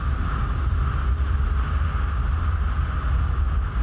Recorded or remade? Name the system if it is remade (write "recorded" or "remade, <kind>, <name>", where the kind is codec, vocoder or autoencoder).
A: recorded